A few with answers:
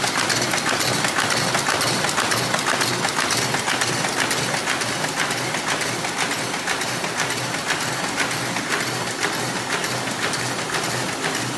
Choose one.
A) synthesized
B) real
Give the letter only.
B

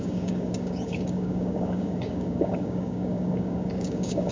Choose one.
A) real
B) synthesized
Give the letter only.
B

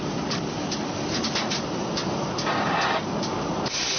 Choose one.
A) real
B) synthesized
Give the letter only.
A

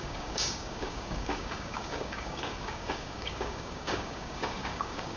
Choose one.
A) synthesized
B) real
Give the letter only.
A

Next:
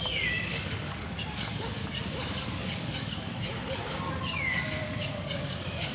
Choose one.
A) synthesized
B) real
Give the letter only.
A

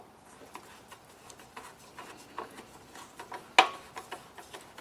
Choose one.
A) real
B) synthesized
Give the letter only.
A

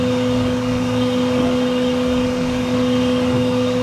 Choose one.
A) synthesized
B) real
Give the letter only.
A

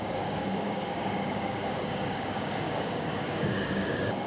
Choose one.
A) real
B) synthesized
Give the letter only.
B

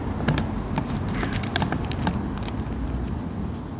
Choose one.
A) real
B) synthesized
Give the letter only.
A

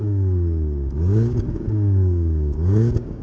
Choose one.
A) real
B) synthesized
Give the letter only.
B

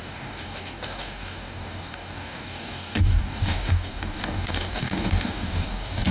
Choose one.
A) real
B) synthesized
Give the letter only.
B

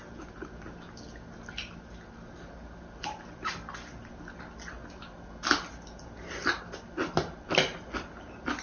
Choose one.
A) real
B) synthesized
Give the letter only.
A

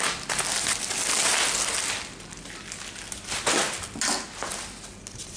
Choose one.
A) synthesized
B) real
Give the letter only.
B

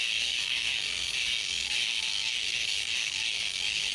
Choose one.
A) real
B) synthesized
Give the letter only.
B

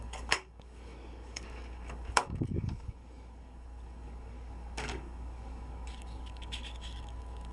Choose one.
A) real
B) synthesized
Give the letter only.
B